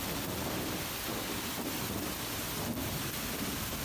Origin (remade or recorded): recorded